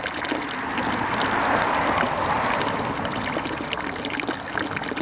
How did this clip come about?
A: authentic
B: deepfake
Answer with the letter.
A